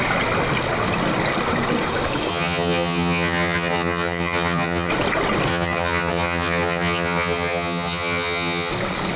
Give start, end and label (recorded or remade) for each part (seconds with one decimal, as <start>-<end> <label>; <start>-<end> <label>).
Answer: 0.0-2.3 recorded; 2.3-4.9 remade; 4.9-5.5 recorded; 5.5-8.7 remade; 8.7-9.2 recorded